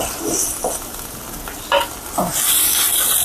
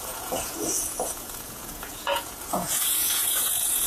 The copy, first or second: second